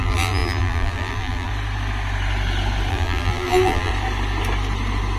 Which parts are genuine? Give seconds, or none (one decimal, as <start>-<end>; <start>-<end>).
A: 1.5-2.9; 3.9-5.2